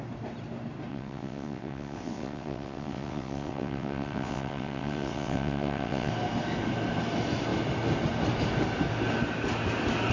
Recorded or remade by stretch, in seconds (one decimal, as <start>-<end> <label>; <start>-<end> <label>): 0.0-0.9 recorded; 0.9-6.1 remade; 6.1-10.1 recorded